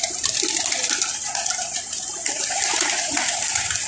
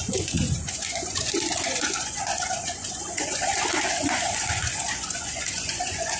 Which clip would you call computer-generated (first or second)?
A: second